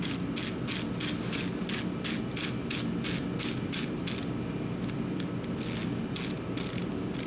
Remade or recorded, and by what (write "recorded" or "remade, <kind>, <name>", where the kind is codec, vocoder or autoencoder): recorded